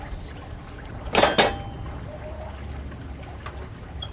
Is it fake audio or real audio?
real